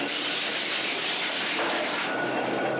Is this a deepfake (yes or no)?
no